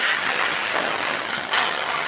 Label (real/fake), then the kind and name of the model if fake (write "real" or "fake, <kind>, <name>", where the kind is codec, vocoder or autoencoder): fake, vocoder, HiFi-GAN